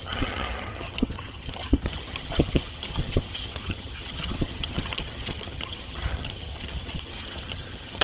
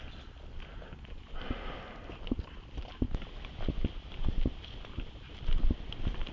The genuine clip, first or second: second